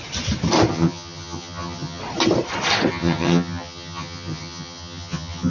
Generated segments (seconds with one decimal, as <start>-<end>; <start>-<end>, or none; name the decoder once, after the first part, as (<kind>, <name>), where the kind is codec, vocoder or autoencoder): 0.7-2.0 (vocoder, HiFi-GAN); 2.9-5.5